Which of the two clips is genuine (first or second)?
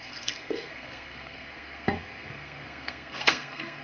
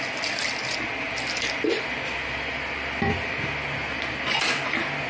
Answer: second